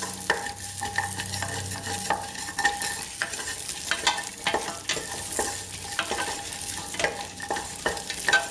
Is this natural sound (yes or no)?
yes